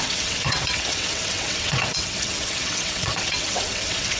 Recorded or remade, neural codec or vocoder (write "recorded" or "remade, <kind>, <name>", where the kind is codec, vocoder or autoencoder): remade, vocoder, WaveNeXt